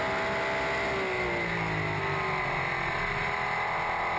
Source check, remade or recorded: recorded